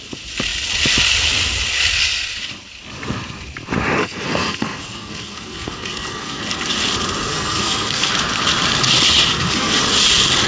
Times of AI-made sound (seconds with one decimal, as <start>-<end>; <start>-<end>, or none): 4.0-6.4; 7.2-8.1; 9.3-9.8